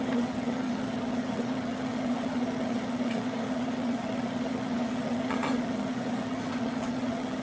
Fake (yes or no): yes